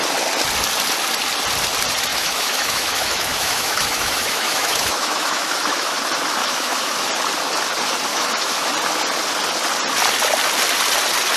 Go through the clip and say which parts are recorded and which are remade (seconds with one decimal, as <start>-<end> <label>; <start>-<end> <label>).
0.0-2.1 recorded; 2.1-6.0 remade; 6.0-6.4 recorded; 6.4-7.1 remade; 7.1-8.1 recorded; 8.1-8.7 remade; 8.7-11.4 recorded